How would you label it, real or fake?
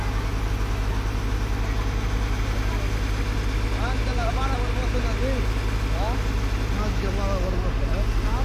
real